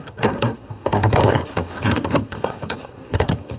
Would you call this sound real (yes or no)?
no